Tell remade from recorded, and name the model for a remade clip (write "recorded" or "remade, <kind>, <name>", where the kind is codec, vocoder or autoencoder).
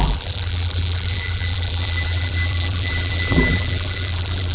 remade, vocoder, BigVGAN v2